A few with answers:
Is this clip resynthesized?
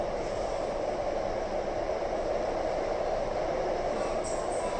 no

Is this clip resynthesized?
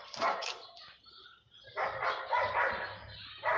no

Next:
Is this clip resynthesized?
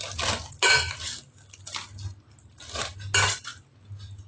no